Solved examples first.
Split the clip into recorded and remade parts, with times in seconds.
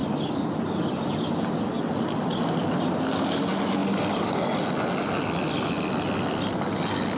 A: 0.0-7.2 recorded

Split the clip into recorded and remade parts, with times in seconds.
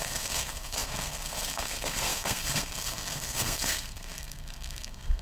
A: 0.0-5.2 remade